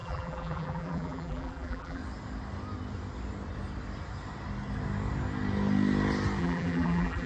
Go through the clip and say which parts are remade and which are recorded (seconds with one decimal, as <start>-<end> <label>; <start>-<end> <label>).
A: 0.0-2.0 remade; 2.0-6.4 recorded; 6.4-7.3 remade